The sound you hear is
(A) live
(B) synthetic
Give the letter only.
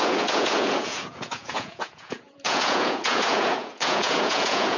B